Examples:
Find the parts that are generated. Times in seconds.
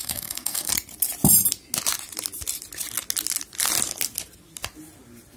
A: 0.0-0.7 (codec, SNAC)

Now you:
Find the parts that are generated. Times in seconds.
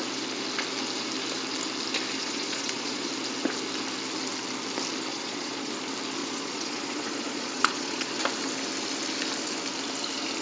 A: 2.2-3.1 (vocoder, Vocos); 5.1-5.7; 6.2-8.1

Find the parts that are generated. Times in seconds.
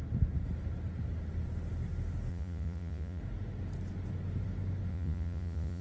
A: 2.3-3.2 (vocoder, Vocos); 4.9-5.8